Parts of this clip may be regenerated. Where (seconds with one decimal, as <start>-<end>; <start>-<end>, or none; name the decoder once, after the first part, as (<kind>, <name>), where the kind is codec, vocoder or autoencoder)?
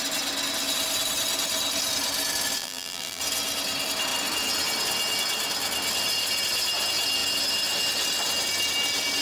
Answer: 2.6-3.2 (vocoder, BigVGAN v2)